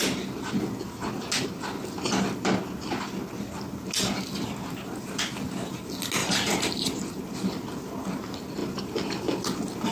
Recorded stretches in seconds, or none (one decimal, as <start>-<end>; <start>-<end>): 0.0-6.2; 7.2-9.9